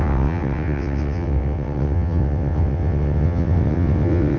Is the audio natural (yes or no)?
no